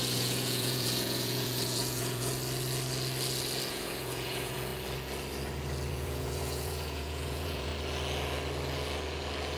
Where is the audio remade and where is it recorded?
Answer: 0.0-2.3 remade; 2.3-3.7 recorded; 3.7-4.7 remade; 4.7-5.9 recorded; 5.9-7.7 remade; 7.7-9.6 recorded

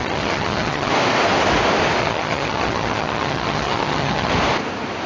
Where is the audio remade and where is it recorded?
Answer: 0.0-0.9 remade; 0.9-2.0 recorded; 2.0-4.3 remade; 4.3-5.1 recorded